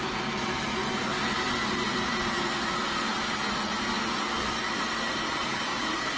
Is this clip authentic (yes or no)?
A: yes